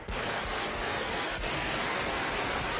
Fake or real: fake